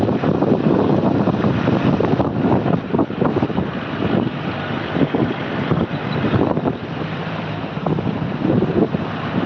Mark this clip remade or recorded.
remade